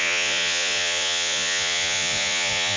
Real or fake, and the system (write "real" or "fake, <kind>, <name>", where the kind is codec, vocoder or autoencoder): fake, vocoder, Vocos